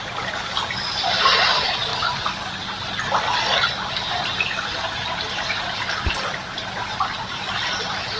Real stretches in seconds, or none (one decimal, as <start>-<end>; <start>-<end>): 1.9-3.9